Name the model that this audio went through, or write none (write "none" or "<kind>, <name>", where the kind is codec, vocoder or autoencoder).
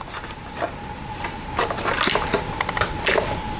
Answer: vocoder, BigVGAN v2